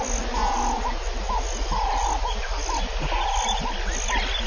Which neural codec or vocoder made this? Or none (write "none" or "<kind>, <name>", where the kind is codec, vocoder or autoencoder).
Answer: none